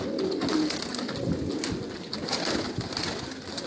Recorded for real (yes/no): yes